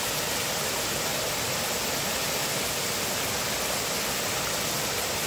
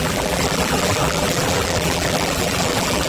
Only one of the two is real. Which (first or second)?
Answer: first